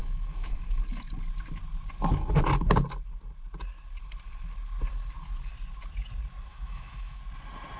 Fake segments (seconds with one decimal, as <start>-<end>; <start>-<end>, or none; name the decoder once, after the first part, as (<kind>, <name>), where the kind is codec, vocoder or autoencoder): 0.0-0.8 (autoencoder, DAC-VAE); 6.5-7.2